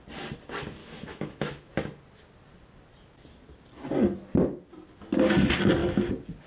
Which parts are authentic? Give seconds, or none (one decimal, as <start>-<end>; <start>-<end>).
0.0-0.8; 1.7-6.5